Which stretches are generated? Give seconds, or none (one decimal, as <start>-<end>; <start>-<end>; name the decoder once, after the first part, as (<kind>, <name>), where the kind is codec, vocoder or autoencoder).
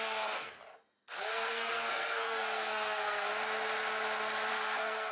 0.0-0.6 (codec, SNAC); 1.2-3.3; 4.5-5.1